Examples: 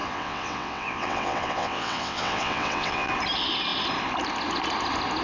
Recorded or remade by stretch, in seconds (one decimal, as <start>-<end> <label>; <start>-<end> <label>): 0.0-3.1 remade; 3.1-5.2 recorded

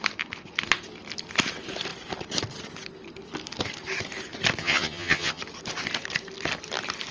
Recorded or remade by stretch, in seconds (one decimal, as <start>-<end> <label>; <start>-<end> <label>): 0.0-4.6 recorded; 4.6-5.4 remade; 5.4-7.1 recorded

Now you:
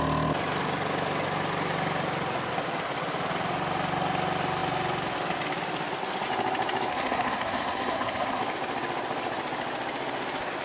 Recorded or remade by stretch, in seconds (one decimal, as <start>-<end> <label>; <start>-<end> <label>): 0.0-6.9 recorded; 6.9-8.4 remade; 8.4-10.6 recorded

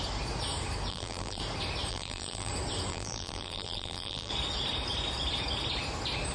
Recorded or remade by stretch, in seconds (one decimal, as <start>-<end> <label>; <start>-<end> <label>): 0.0-0.9 recorded; 0.9-1.4 remade; 1.4-1.9 recorded; 1.9-2.5 remade; 2.5-2.9 recorded; 2.9-4.3 remade; 4.3-6.3 recorded

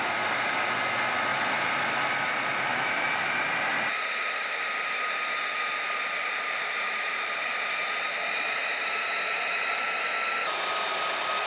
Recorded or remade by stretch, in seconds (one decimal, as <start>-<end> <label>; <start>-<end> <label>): 0.0-1.3 recorded; 1.3-1.8 remade; 1.8-2.7 recorded; 2.7-3.4 remade; 3.4-6.2 recorded; 6.2-10.1 remade; 10.1-11.5 recorded